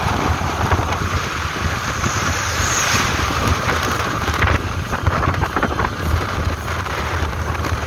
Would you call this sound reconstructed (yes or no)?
yes